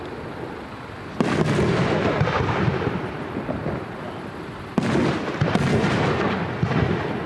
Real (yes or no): yes